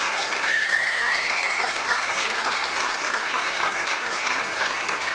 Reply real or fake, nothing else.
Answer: fake